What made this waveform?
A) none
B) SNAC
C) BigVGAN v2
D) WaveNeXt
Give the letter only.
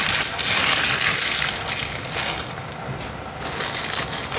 A